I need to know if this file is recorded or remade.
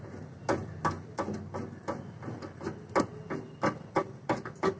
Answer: recorded